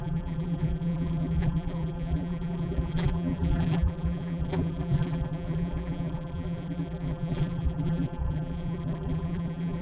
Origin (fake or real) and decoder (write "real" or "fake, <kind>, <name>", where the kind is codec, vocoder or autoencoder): fake, vocoder, BigVGAN v2